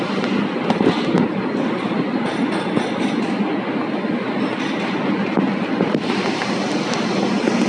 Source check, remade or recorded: recorded